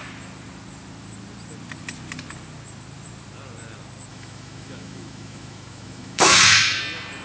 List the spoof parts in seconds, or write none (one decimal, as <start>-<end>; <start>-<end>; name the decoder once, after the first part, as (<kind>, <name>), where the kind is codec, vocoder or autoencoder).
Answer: 4.1-6.8 (autoencoder, DAC-VAE)